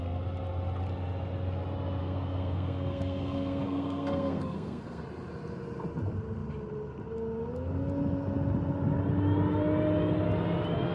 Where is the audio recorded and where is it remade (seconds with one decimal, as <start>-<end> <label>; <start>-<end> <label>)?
0.0-2.0 recorded; 2.0-5.0 remade; 5.0-10.9 recorded